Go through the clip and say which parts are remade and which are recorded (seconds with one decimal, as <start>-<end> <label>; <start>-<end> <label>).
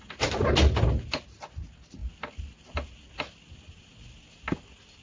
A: 0.0-5.0 recorded